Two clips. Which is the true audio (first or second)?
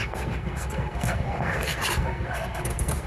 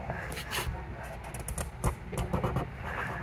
second